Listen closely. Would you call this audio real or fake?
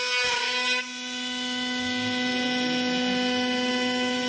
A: real